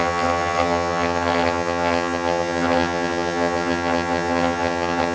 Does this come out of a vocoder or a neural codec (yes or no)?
yes